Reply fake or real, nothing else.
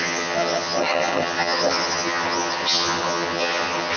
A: fake